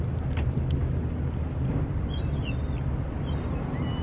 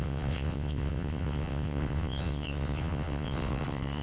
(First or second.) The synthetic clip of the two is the second